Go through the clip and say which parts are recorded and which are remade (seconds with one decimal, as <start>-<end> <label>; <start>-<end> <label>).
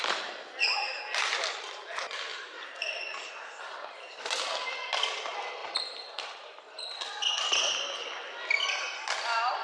0.0-2.3 recorded; 2.3-4.2 remade; 4.2-5.6 recorded; 5.6-6.6 remade; 6.6-9.6 recorded